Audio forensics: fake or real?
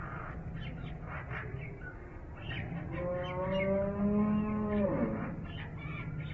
real